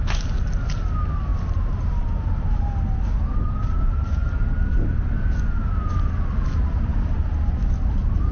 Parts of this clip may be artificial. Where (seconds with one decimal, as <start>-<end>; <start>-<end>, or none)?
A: 1.3-2.7